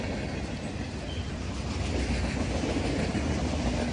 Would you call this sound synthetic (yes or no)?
no